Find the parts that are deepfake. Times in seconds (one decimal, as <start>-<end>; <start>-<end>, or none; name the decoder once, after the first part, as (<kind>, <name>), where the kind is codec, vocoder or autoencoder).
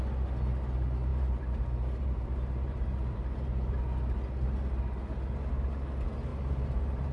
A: 1.1-3.8 (vocoder, BigVGAN v2); 6.3-7.1